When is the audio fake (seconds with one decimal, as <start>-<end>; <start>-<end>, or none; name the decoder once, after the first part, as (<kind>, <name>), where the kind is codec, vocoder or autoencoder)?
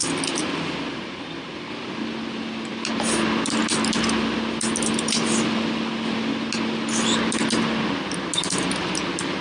none